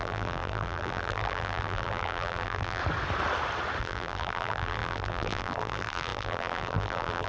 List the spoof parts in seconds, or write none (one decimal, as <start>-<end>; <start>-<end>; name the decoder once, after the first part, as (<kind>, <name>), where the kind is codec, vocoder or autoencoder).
0.0-2.8 (vocoder, BigVGAN v2); 3.8-7.3